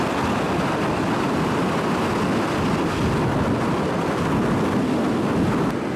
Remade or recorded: recorded